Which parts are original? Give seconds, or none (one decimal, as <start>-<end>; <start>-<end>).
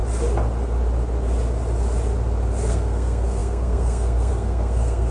0.0-2.7